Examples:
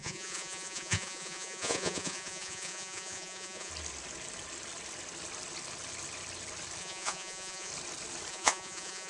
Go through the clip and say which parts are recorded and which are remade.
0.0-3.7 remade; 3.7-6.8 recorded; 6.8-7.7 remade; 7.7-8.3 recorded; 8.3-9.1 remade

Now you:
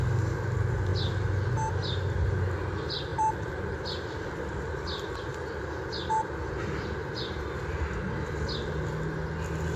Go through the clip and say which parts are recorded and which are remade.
0.0-3.1 recorded; 3.1-3.6 remade; 3.6-9.8 recorded

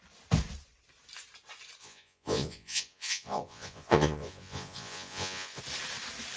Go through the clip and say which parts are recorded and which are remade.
0.0-1.8 recorded; 1.8-5.6 remade; 5.6-6.4 recorded